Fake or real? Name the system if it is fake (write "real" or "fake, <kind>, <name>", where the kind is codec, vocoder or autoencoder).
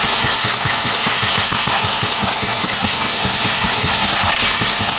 fake, codec, SNAC